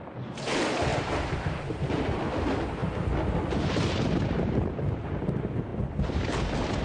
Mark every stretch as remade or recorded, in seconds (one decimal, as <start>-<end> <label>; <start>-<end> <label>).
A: 0.0-0.9 recorded; 0.9-2.1 remade; 2.1-6.8 recorded